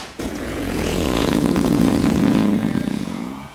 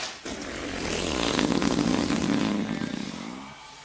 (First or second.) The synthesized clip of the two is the first